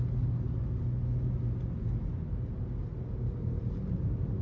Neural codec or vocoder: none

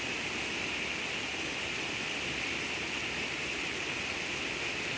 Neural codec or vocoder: none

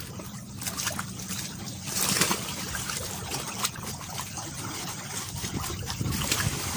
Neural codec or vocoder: none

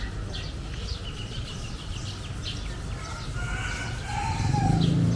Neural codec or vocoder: none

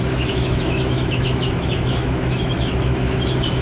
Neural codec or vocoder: autoencoder, DAC-VAE